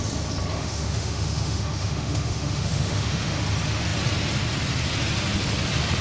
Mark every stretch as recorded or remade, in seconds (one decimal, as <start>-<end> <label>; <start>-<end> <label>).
0.0-0.5 recorded; 0.5-3.4 remade; 3.4-6.0 recorded